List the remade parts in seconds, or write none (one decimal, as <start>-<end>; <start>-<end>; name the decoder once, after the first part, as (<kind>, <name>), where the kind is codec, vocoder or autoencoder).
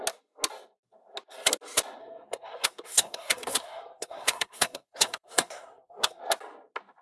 2.0-6.2 (codec, SNAC)